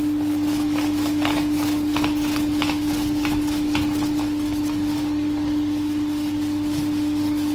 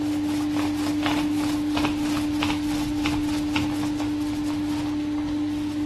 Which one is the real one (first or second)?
second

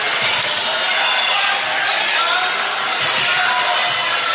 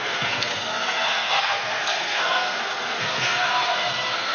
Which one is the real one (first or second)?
first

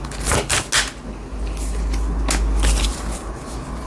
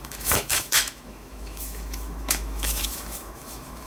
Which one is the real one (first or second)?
first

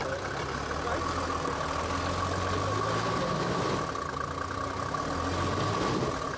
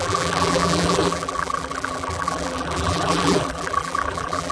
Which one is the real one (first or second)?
first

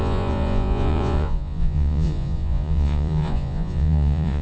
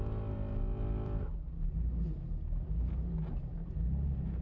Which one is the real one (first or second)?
second